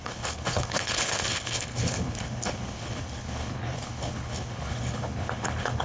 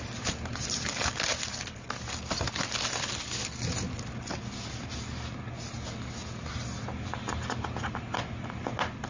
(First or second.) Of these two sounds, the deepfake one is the first